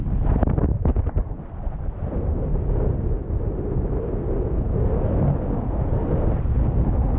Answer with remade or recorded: recorded